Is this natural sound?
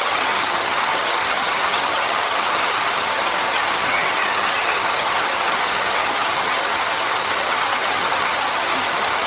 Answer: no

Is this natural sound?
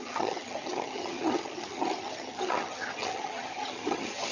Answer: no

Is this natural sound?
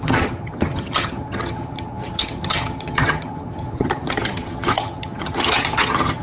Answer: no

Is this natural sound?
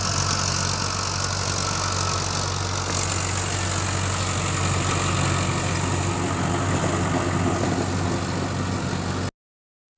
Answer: yes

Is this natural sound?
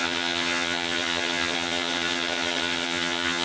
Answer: no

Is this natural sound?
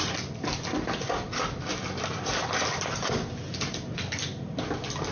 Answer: yes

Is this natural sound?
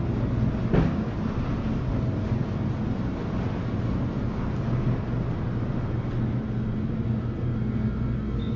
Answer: yes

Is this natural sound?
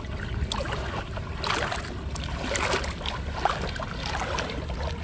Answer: yes